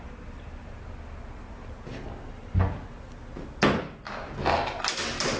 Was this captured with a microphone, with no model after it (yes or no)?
yes